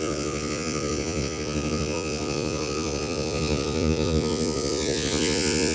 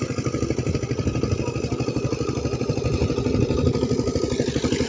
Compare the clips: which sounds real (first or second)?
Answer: second